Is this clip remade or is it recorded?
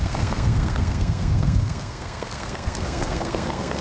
remade